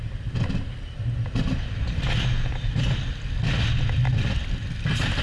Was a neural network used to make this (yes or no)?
no